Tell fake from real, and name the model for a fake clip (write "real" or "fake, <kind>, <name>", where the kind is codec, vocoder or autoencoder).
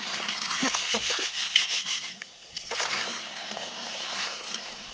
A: fake, codec, SNAC